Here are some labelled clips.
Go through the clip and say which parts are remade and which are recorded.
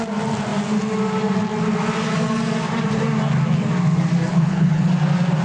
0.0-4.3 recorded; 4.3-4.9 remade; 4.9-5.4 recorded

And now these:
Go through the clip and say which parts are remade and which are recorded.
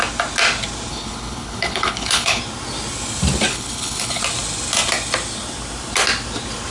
0.0-0.9 recorded; 0.9-2.4 remade; 2.4-3.5 recorded; 3.5-4.2 remade; 4.2-6.7 recorded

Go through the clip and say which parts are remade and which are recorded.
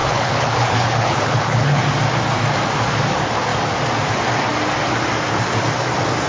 0.0-1.8 remade; 1.8-6.3 recorded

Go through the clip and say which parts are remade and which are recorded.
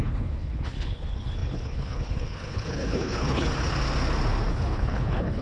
0.0-3.5 remade; 3.5-4.5 recorded; 4.5-5.4 remade